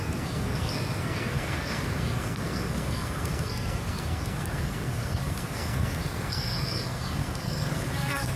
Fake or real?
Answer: fake